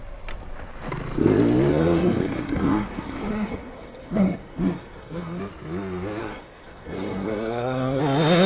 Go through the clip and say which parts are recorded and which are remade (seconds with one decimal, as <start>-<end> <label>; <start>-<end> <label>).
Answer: 0.0-1.7 recorded; 1.7-5.4 remade; 5.4-6.2 recorded; 6.2-8.0 remade; 8.0-8.5 recorded

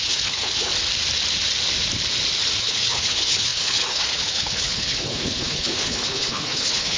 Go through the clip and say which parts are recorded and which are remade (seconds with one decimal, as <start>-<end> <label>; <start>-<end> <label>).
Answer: 0.0-0.7 remade; 0.7-2.6 recorded; 2.6-7.0 remade

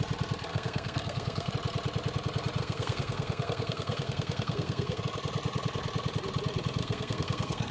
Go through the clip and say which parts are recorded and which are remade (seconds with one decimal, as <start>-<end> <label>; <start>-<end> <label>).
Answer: 0.0-0.5 recorded; 0.5-1.5 remade; 1.5-2.6 recorded; 2.6-5.0 remade; 5.0-6.8 recorded; 6.8-7.7 remade

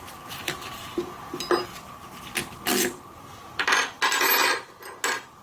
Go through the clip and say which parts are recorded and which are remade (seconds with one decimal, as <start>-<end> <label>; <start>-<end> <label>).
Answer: 0.0-1.7 recorded; 1.7-2.3 remade; 2.3-5.4 recorded

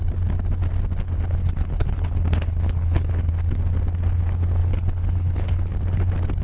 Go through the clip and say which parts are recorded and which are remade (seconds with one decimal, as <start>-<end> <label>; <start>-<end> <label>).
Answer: 0.0-1.4 recorded; 1.4-3.3 remade; 3.3-4.6 recorded; 4.6-5.7 remade; 5.7-6.4 recorded

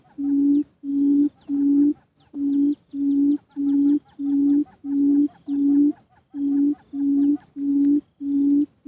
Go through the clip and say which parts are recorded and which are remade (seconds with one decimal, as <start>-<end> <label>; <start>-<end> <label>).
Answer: 0.0-8.9 recorded

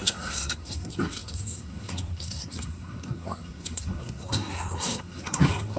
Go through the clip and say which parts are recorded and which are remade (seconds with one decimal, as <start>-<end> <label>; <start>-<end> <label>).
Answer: 0.0-5.8 remade

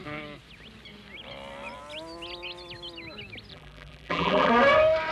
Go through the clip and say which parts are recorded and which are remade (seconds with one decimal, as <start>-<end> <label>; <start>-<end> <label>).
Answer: 0.0-3.5 recorded; 3.5-4.5 remade; 4.5-5.1 recorded